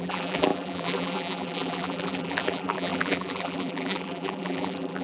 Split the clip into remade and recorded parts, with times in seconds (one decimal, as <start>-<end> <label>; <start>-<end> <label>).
0.0-5.0 remade